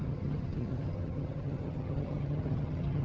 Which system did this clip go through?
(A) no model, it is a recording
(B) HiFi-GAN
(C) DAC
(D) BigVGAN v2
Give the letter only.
B